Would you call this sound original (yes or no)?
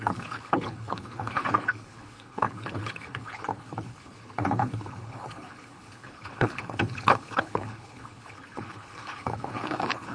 no